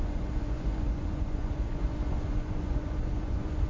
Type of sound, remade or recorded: remade